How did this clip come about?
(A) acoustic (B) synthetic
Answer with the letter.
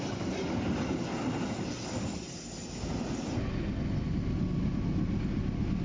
A